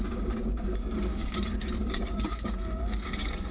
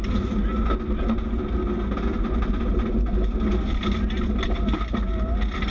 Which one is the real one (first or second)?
second